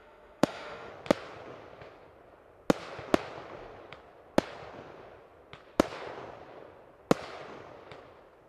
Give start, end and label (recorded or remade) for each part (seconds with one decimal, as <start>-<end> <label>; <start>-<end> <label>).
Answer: 0.0-0.9 remade; 0.9-8.5 recorded